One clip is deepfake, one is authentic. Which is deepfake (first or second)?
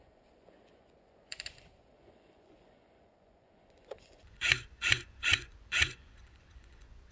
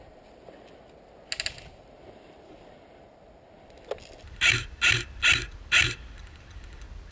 first